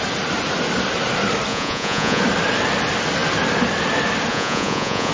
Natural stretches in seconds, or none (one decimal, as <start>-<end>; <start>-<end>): 0.0-1.5; 2.2-4.3